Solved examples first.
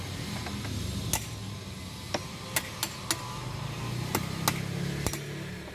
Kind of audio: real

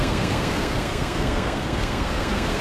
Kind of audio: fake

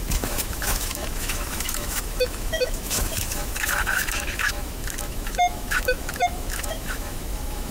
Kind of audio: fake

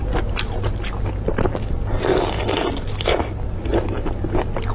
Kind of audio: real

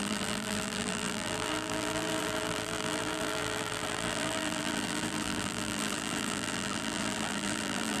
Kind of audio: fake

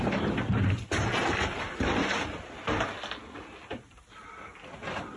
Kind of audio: real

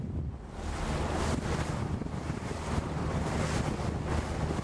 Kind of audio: real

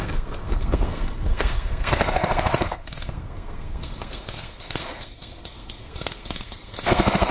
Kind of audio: fake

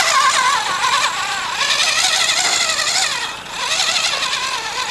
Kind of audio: real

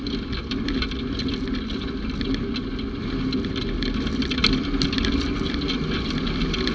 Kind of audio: real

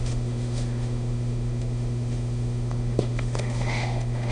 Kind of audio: fake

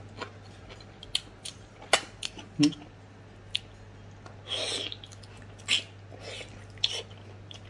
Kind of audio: real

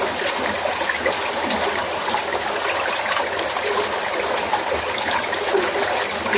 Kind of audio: real